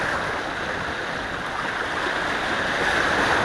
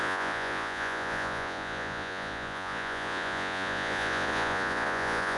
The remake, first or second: second